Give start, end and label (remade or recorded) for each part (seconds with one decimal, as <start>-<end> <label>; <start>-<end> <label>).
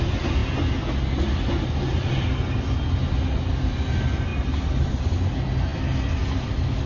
0.0-6.9 recorded